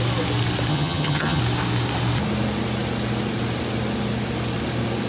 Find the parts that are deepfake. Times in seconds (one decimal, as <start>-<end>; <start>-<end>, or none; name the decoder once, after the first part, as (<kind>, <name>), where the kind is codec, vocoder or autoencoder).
0.7-1.4 (vocoder, HiFi-GAN)